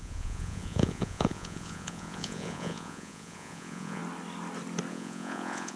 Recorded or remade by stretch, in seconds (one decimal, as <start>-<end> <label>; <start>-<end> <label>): 0.0-4.0 remade; 4.0-4.9 recorded; 4.9-5.8 remade